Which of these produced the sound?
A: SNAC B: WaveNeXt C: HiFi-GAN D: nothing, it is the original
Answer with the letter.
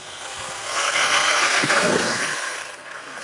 A